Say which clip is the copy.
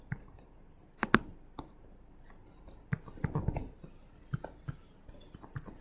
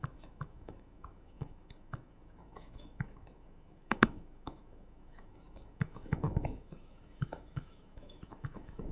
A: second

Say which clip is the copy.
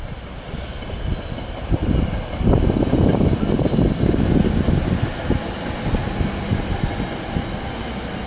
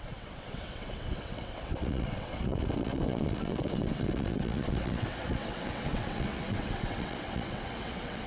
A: second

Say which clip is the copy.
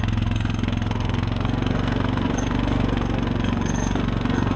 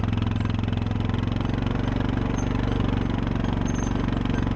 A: first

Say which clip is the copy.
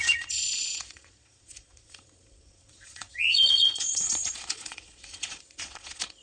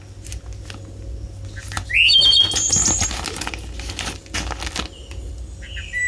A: first